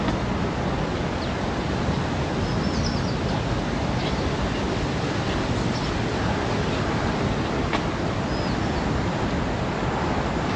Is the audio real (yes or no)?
yes